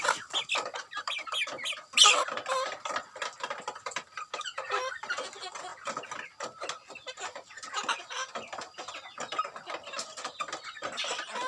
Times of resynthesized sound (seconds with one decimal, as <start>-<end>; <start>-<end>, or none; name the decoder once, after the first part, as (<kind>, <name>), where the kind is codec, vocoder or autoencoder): none